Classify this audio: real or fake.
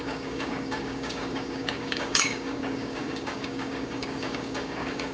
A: fake